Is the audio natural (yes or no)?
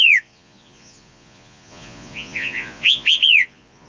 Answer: no